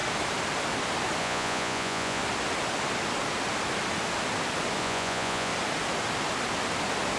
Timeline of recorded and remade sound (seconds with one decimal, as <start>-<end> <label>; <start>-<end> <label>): 0.0-1.2 recorded; 1.2-2.2 remade; 2.2-4.8 recorded; 4.8-5.5 remade; 5.5-7.2 recorded